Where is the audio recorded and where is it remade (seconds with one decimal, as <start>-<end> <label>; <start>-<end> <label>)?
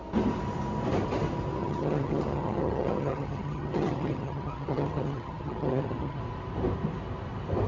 0.0-1.6 recorded; 1.6-6.2 remade; 6.2-7.7 recorded